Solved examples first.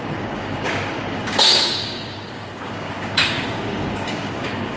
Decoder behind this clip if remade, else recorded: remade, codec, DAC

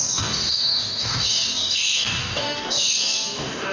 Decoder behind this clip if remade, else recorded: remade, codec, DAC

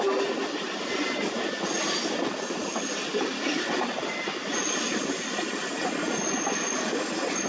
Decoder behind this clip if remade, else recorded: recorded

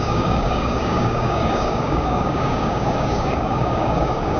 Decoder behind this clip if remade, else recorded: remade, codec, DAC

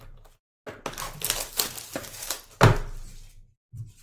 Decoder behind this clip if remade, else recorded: recorded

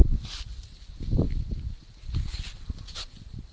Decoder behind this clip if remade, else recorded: recorded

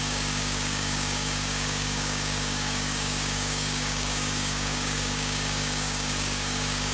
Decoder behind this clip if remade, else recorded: remade, codec, DAC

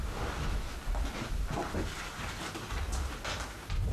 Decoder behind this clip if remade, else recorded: recorded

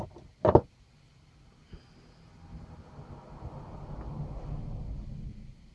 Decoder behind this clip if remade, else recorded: recorded